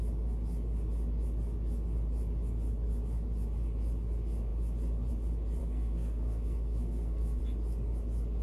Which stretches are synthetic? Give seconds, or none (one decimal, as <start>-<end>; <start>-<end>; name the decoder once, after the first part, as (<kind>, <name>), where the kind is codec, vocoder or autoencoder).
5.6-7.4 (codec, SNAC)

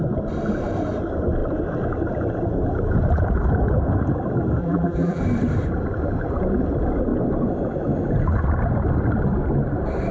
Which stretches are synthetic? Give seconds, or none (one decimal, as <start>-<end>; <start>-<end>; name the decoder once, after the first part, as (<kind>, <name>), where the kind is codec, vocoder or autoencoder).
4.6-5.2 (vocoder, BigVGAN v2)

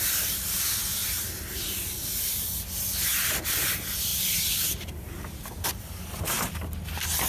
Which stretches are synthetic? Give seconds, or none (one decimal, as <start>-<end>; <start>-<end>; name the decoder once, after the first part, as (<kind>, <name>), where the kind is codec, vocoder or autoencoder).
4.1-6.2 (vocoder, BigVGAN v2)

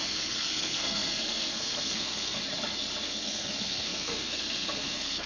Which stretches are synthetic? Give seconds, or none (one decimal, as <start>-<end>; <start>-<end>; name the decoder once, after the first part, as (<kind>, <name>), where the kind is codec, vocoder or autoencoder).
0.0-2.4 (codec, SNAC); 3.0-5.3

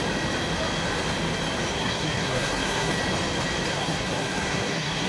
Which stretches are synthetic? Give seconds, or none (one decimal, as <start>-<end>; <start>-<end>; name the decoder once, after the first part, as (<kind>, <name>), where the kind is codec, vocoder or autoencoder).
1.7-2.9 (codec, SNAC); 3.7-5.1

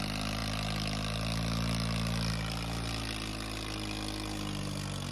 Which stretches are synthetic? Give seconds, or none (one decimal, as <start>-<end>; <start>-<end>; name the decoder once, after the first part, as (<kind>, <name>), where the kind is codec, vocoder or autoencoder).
none